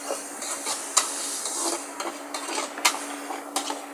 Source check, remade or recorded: recorded